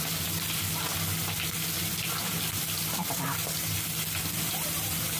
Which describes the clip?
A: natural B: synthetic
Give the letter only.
A